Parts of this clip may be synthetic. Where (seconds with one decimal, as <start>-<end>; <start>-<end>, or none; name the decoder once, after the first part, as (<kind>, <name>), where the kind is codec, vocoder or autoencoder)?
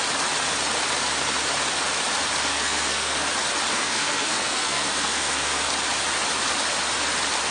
2.5-3.3 (codec, SNAC); 3.7-5.7